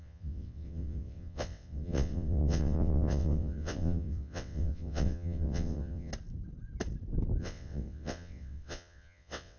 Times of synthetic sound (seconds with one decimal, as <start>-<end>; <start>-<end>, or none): 0.0-6.1; 7.4-9.6